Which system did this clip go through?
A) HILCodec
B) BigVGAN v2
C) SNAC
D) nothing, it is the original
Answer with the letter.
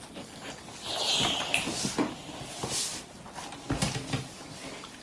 D